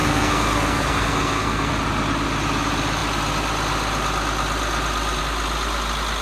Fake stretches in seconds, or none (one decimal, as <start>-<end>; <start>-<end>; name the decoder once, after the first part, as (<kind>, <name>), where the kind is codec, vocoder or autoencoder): 0.0-1.7 (codec, SNAC)